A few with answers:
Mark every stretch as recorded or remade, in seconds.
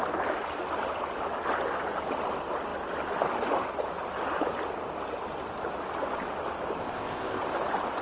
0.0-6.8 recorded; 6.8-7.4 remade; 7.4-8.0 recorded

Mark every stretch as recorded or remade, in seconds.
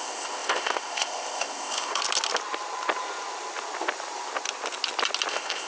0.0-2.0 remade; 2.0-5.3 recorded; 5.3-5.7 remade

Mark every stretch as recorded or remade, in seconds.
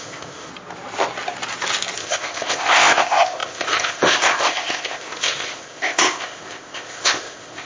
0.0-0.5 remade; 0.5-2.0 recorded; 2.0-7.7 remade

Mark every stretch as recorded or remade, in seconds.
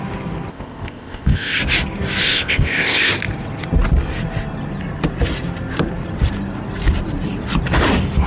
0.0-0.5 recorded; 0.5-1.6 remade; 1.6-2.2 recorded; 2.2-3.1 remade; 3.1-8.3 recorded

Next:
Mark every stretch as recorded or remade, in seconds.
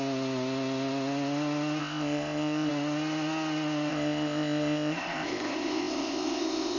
0.0-1.8 recorded; 1.8-2.7 remade; 2.7-3.9 recorded; 3.9-6.8 remade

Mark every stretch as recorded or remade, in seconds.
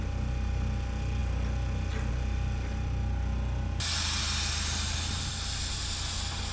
0.0-6.5 recorded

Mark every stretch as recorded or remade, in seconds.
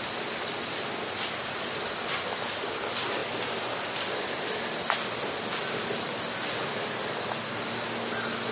0.0-8.5 recorded